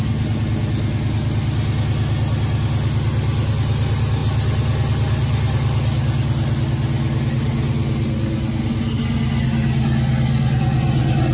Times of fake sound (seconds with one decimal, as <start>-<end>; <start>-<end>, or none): none